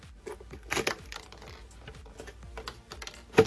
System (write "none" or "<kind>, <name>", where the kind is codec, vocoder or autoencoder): none